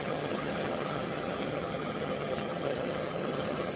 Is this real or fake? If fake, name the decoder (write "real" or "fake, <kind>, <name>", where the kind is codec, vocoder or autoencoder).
fake, vocoder, HiFi-GAN